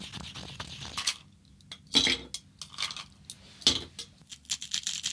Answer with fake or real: real